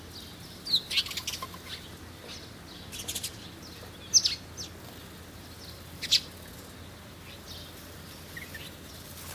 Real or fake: real